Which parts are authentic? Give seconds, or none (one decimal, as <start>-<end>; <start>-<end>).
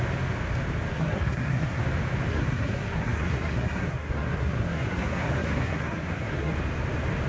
0.0-0.9; 1.8-2.3; 6.5-7.3